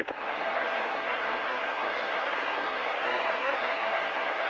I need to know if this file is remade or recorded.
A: remade